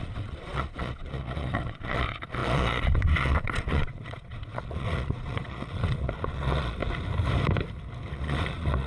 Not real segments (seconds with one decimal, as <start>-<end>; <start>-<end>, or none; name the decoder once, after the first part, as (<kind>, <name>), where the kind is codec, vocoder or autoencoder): 0.0-6.8 (vocoder, Vocos); 8.1-8.9